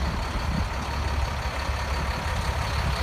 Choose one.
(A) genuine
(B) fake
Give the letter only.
A